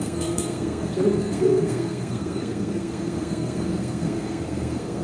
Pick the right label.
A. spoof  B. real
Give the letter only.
A